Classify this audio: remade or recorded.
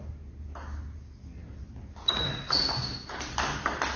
recorded